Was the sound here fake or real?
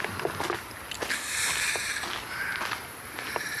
real